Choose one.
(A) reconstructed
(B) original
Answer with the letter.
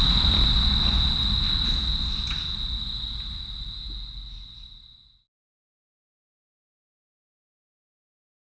B